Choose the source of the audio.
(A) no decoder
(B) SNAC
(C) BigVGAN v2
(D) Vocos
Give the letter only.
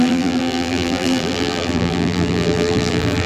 C